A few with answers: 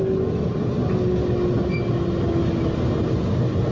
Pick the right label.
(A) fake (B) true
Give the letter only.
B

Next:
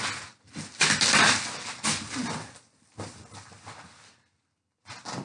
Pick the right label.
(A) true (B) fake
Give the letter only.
A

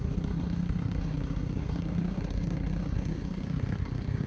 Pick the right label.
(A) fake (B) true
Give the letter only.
A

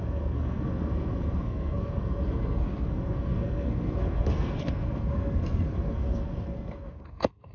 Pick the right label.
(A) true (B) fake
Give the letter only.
B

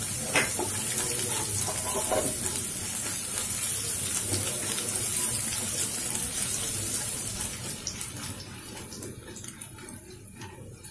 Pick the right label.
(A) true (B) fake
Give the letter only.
A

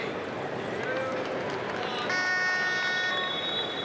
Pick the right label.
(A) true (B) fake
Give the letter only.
A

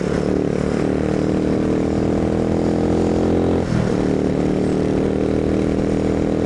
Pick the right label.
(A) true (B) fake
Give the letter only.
A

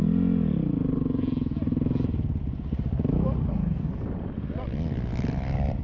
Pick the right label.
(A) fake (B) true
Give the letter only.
B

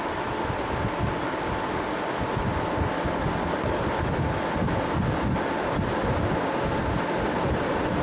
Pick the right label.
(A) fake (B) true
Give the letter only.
B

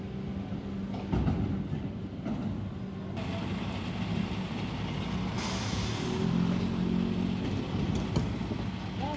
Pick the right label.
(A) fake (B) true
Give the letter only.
B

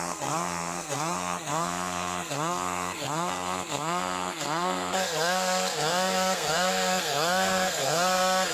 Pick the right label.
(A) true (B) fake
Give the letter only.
B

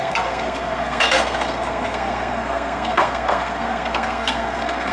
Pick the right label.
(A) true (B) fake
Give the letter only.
B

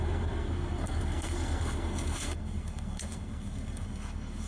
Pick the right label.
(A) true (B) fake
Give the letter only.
B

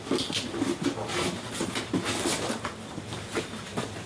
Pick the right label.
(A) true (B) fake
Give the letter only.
A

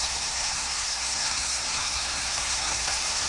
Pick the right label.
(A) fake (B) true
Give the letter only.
A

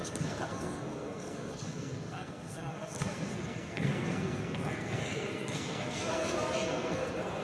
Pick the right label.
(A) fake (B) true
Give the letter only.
A